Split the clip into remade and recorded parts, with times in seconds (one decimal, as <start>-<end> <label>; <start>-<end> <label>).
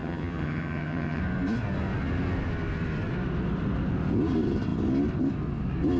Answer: 0.0-1.2 remade; 1.2-6.0 recorded